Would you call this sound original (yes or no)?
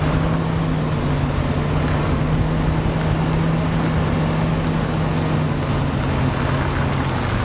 yes